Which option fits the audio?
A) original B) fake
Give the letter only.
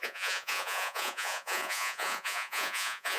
B